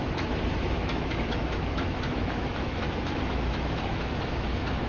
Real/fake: fake